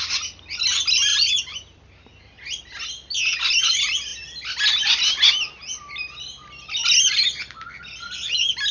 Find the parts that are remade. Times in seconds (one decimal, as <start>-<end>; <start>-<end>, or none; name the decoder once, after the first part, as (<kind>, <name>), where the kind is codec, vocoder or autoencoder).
1.1-2.2 (vocoder, BigVGAN v2)